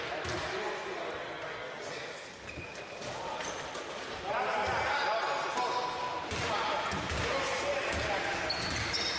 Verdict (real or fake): real